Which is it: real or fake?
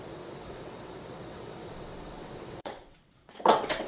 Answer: fake